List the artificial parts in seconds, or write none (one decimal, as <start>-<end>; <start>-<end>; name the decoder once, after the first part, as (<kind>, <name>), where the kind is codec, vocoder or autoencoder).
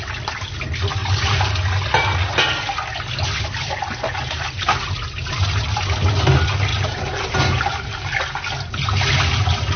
1.0-1.5 (vocoder, BigVGAN v2); 6.7-8.2